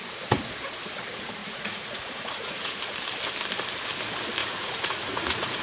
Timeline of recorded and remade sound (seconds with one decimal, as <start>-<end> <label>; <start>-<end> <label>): 0.0-1.4 recorded; 1.4-2.8 remade; 2.8-4.4 recorded; 4.4-5.6 remade